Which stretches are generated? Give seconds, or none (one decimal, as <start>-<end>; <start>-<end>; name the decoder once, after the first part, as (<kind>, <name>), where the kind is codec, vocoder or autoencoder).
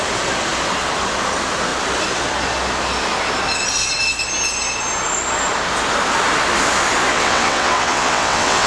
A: 7.1-8.7 (vocoder, WaveNeXt)